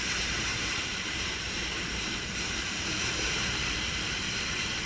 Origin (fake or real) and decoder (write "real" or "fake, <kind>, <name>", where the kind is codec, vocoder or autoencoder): fake, vocoder, BigVGAN v2